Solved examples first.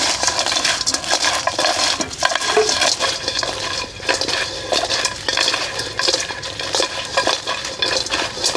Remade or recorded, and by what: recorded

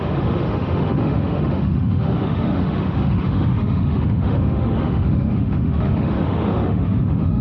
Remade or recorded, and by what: remade, autoencoder, DAC-VAE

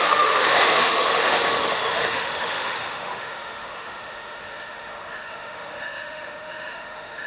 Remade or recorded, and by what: remade, autoencoder, DAC-VAE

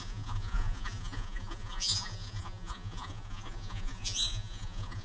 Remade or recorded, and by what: remade, vocoder, Vocos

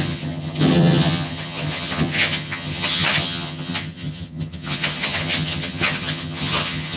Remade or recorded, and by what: remade, vocoder, HiFi-GAN